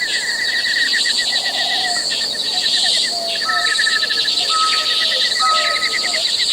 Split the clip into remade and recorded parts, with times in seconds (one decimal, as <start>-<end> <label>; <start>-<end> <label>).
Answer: 0.0-0.9 remade; 0.9-3.3 recorded; 3.3-3.9 remade; 3.9-5.7 recorded; 5.7-6.5 remade